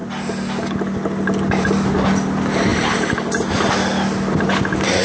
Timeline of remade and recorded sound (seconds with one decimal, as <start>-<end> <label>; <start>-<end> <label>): 0.0-1.6 recorded; 1.6-2.7 remade; 2.7-4.4 recorded; 4.4-5.0 remade